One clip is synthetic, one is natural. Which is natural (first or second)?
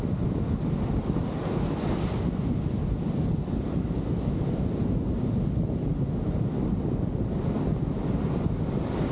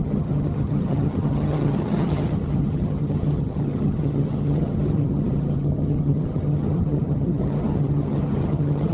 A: first